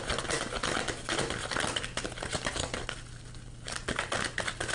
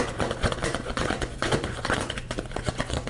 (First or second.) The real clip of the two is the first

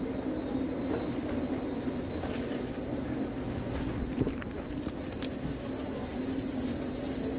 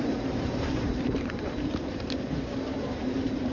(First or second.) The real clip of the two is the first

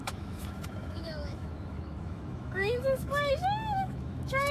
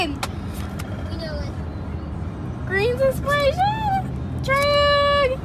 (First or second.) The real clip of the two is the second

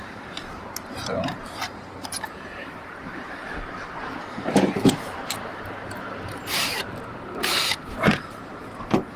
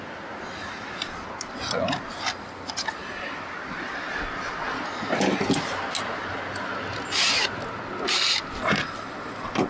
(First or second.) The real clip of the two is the second